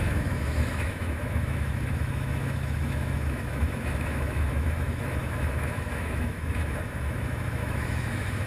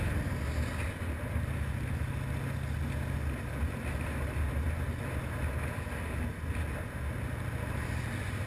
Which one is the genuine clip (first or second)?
second